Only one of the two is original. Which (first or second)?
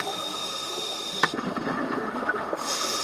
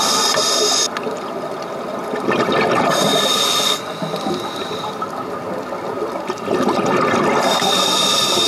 second